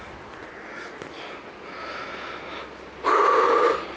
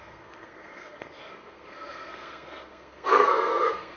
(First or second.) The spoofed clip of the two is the second